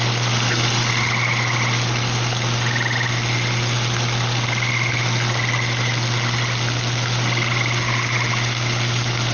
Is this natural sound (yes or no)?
yes